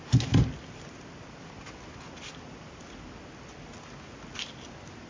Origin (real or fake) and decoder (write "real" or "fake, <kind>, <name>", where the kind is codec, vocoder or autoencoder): real